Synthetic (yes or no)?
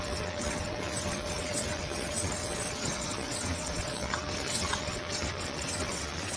yes